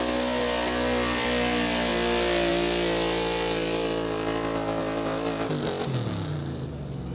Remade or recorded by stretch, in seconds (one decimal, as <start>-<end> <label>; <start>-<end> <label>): 0.0-7.1 recorded